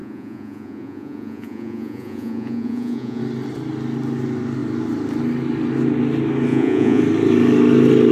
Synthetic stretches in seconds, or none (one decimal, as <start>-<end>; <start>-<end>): 0.0-3.2; 6.5-7.0